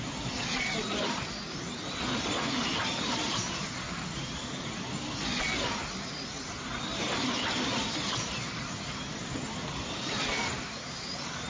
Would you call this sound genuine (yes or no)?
yes